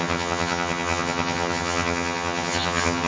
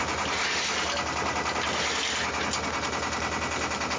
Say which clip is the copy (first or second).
first